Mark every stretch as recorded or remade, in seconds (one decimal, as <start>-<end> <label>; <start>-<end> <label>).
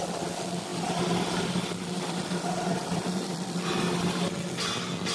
0.0-0.7 recorded; 0.7-3.8 remade; 3.8-5.1 recorded